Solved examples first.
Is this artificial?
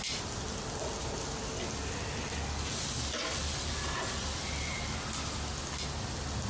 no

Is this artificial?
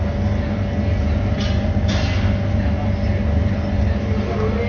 no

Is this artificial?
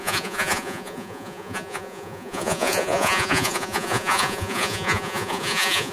yes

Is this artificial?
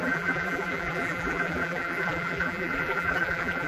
yes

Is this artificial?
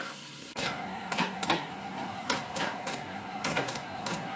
yes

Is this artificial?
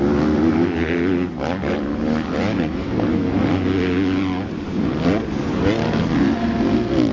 no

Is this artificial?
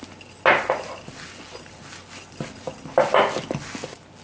no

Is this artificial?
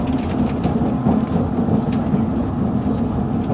no